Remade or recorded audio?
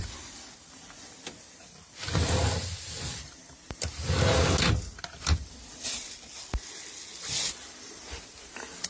recorded